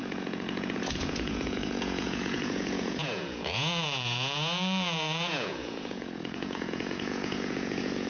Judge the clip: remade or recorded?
remade